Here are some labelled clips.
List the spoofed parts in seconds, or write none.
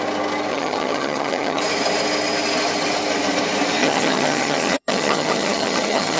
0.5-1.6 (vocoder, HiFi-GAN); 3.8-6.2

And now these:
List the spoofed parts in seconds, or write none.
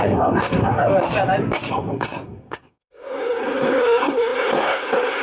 0.0-0.9 (codec, SNAC); 1.7-5.2